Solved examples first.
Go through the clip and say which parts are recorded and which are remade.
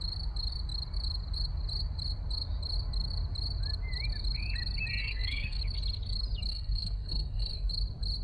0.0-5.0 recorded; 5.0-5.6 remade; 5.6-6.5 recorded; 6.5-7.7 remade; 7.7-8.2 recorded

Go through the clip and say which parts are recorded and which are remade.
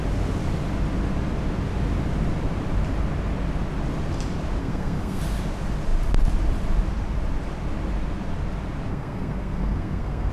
0.0-4.6 recorded; 4.6-5.2 remade; 5.2-8.9 recorded; 8.9-10.3 remade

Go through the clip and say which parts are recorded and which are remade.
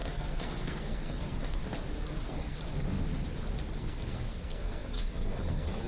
0.0-1.6 remade; 1.6-2.2 recorded; 2.2-2.6 remade; 2.6-3.7 recorded; 3.7-5.9 remade